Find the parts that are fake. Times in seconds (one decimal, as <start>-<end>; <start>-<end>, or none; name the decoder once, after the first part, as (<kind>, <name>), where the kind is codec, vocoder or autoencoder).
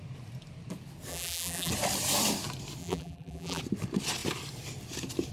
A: 1.1-1.7 (vocoder, BigVGAN v2); 2.8-3.6